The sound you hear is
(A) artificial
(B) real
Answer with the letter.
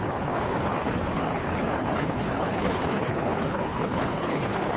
A